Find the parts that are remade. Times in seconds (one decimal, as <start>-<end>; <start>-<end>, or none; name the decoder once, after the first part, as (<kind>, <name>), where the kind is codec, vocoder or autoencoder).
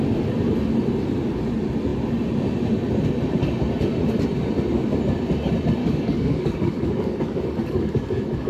5.8-8.5 (codec, DAC)